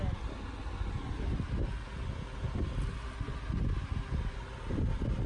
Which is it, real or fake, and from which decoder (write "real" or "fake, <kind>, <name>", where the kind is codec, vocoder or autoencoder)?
real